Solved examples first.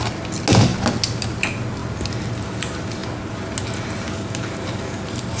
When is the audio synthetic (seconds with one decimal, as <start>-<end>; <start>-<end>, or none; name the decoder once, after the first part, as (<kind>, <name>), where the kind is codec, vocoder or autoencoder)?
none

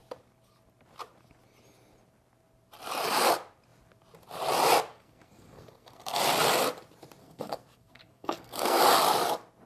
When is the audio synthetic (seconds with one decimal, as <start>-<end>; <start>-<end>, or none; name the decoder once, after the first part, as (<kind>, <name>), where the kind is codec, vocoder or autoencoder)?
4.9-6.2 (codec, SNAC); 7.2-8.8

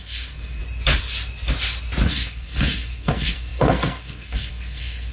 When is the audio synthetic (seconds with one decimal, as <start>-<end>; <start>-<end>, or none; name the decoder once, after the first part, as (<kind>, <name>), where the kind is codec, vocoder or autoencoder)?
0.0-0.6 (codec, SNAC); 2.1-5.1

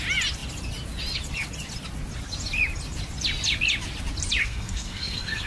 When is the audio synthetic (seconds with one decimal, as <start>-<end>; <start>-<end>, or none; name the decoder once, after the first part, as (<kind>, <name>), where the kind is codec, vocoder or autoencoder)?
4.4-5.5 (codec, SNAC)

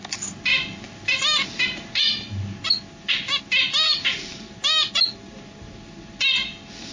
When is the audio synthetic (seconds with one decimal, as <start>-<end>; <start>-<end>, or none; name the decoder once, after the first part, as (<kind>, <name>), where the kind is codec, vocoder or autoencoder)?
none

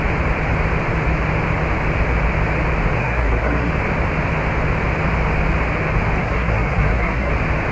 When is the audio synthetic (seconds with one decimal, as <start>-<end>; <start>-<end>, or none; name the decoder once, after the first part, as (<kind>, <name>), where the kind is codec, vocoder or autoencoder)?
3.0-3.7 (codec, SNAC); 6.2-7.3